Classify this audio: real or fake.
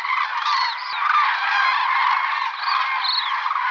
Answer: real